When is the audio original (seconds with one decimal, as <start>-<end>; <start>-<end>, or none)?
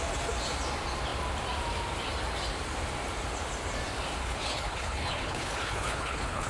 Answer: 0.0-4.2